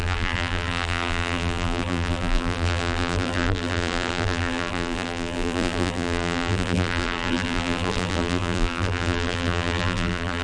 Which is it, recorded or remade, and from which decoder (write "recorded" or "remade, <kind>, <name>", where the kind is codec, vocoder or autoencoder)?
remade, vocoder, BigVGAN v2